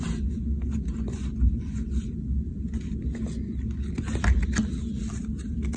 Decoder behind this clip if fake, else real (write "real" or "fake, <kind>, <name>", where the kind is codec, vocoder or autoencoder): real